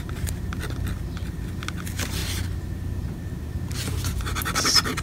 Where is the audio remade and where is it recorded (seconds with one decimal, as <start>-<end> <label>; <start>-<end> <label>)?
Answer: 0.0-5.0 recorded